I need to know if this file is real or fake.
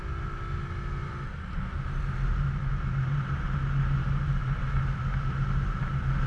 real